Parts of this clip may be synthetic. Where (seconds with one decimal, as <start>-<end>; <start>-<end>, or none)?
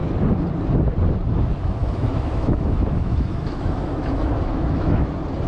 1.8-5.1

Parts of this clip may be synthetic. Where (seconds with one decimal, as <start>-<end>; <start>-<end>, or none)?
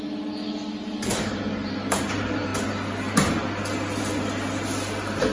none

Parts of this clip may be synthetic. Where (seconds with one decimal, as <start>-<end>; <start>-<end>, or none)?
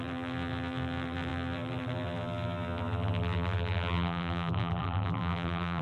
0.0-5.8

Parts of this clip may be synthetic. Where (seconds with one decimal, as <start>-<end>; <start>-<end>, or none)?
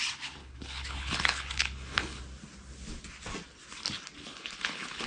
0.4-2.2; 4.3-5.1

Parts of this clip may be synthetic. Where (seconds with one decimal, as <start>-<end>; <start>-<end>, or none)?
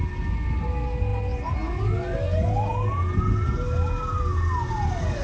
none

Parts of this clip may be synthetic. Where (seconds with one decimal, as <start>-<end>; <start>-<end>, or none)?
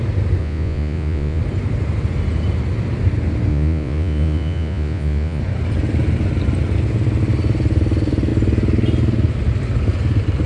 0.4-1.4; 3.5-5.4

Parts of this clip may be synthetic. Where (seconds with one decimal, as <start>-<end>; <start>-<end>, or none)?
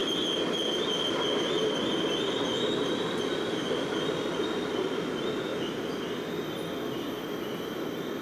none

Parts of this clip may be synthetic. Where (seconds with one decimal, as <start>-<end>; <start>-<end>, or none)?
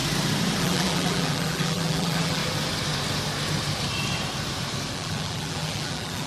0.6-2.4; 4.9-6.3